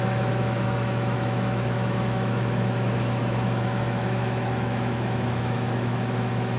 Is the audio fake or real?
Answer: fake